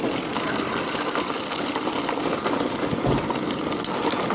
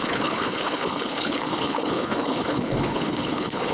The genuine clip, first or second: first